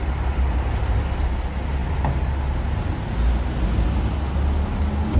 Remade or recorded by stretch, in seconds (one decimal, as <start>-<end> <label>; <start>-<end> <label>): 0.0-5.2 recorded